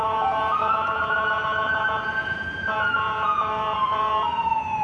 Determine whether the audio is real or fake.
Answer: fake